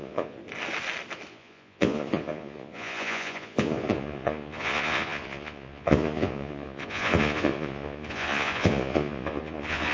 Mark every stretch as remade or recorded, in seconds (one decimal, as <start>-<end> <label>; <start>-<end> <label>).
0.0-0.4 remade; 0.4-1.3 recorded; 1.3-9.9 remade